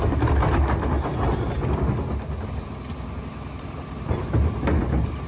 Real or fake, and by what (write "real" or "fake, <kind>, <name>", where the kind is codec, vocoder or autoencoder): real